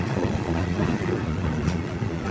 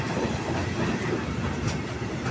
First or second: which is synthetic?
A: first